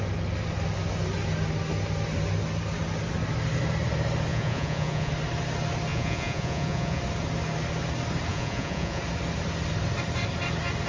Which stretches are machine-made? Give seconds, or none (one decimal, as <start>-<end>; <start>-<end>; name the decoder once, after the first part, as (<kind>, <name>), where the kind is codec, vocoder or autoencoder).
4.3-5.1 (vocoder, Vocos); 5.9-7.0; 8.3-9.0